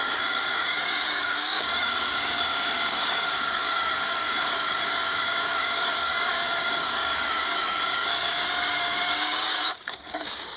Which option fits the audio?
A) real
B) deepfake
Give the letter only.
B